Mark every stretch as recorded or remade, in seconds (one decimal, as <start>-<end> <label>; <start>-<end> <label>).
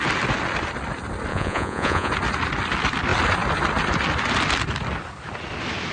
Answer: 0.0-1.3 recorded; 1.3-2.1 remade; 2.1-5.9 recorded